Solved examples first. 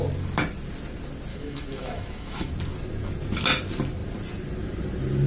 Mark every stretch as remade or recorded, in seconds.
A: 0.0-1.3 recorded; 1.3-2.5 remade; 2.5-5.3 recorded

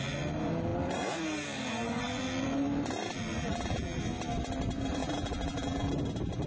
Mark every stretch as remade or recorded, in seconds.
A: 0.0-3.4 recorded; 3.4-4.0 remade; 4.0-5.0 recorded; 5.0-5.9 remade; 5.9-6.5 recorded

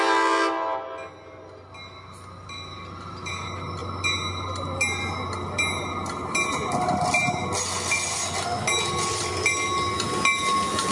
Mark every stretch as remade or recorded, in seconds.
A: 0.0-10.9 recorded